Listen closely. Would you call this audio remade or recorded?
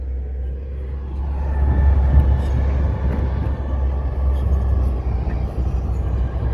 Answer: recorded